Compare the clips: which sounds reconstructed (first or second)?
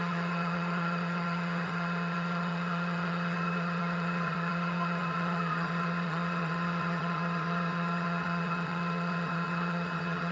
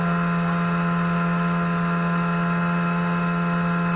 first